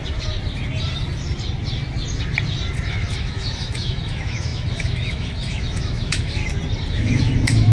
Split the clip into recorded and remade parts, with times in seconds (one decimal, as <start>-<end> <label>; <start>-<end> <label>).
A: 0.0-2.9 recorded; 2.9-6.4 remade; 6.4-6.9 recorded; 6.9-7.7 remade